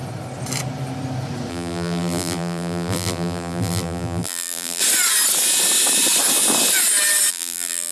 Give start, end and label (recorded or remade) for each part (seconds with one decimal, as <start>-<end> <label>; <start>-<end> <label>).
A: 0.0-1.5 recorded; 1.5-4.8 remade; 4.8-7.3 recorded; 7.3-7.9 remade